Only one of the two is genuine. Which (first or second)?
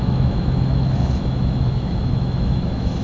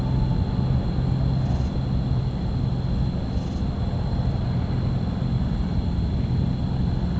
second